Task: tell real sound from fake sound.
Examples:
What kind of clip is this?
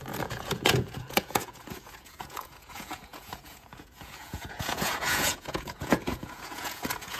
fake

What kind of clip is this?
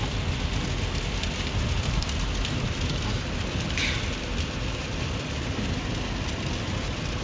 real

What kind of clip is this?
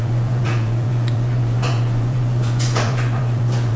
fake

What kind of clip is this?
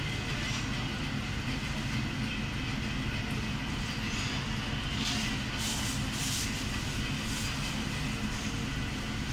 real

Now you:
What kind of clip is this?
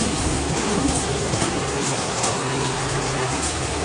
fake